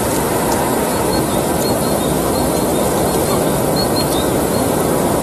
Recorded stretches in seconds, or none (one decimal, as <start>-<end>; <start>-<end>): 0.0-5.2